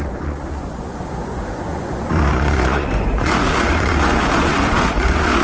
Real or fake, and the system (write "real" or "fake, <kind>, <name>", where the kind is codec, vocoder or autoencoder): fake, vocoder, Vocos